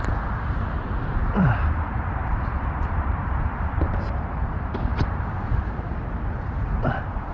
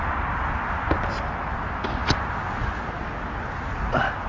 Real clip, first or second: second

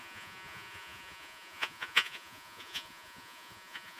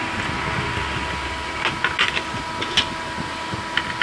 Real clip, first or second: second